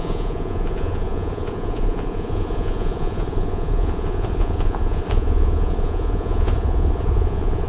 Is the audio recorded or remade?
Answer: remade